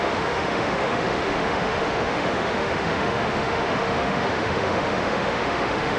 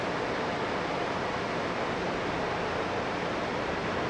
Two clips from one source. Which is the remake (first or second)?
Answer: first